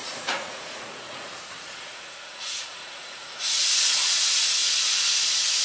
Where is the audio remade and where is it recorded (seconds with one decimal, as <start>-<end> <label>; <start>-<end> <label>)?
0.0-4.6 remade; 4.6-5.6 recorded